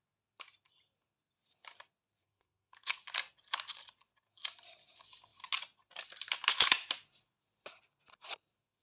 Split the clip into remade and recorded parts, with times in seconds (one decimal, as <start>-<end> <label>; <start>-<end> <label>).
0.0-2.2 recorded; 2.2-3.0 remade; 3.0-8.8 recorded